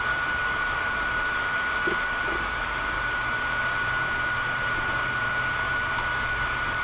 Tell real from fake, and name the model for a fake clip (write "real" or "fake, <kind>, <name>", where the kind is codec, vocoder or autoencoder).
fake, vocoder, BigVGAN v2